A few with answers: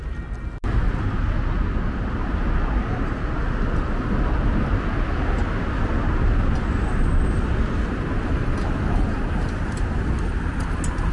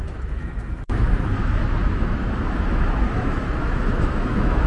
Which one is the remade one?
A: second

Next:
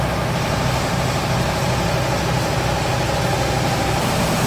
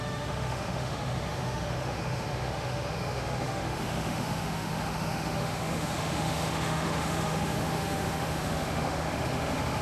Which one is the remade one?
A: second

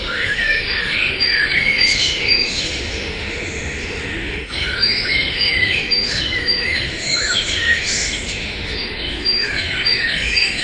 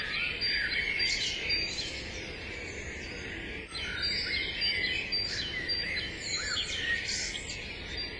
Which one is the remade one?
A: first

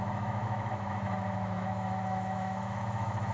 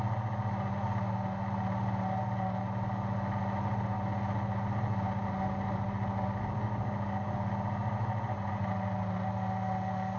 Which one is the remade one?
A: first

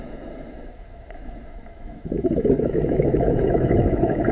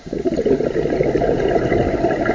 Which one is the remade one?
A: first